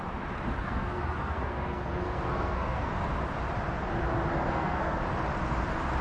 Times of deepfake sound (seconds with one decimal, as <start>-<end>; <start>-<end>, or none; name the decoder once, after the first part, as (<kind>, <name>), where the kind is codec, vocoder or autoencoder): 0.6-2.9 (codec, SNAC); 4.3-5.0